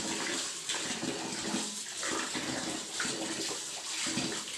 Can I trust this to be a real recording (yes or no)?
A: yes